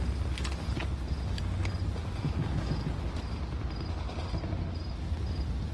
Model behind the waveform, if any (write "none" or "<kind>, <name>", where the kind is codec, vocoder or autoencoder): none